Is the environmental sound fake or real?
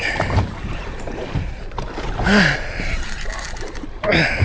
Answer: fake